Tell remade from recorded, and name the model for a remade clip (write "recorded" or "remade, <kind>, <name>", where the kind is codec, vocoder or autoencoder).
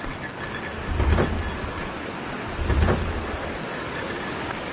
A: recorded